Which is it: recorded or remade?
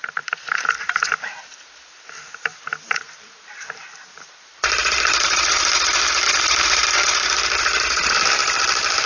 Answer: remade